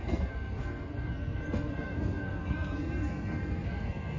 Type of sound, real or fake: fake